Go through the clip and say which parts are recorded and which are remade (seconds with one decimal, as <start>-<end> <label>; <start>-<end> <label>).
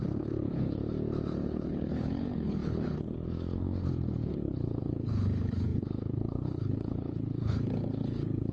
0.0-0.8 remade; 0.8-1.5 recorded; 1.5-8.5 remade